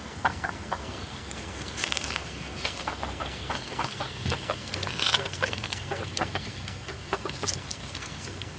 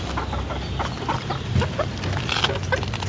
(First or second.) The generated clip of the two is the first